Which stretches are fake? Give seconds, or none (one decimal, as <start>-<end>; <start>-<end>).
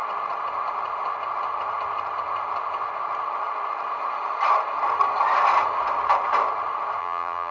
7.0-7.5